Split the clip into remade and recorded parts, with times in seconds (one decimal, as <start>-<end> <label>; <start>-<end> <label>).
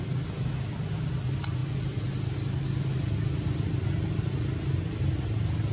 0.0-5.7 recorded